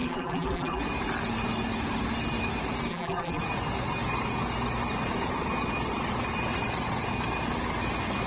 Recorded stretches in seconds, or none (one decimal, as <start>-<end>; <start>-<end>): 0.8-2.9; 3.4-8.3